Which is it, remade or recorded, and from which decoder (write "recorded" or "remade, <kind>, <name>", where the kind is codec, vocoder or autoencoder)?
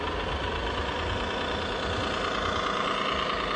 recorded